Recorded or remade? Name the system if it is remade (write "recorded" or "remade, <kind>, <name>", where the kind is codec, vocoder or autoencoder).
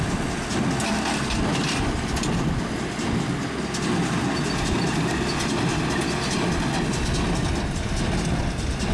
recorded